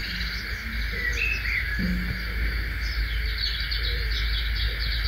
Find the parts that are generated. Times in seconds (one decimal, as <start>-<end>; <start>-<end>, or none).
none